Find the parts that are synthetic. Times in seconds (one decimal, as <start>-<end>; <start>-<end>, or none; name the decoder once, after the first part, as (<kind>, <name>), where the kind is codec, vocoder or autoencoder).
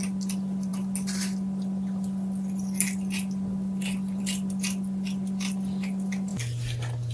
none